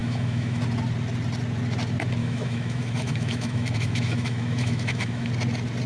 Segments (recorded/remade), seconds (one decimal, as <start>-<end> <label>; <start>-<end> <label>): 0.0-0.6 remade; 0.6-2.2 recorded; 2.2-5.3 remade; 5.3-5.9 recorded